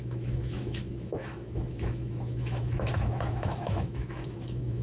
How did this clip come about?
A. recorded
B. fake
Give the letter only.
B